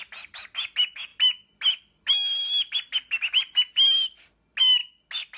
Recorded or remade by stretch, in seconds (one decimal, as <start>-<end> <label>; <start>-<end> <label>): 0.0-5.4 recorded